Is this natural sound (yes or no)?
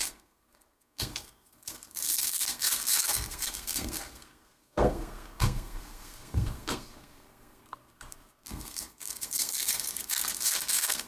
no